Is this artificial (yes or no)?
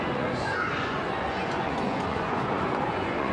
yes